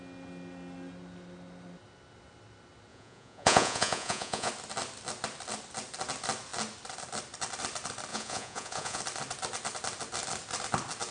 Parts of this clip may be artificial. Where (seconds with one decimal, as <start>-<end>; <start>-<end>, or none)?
2.9-4.5; 8.1-9.0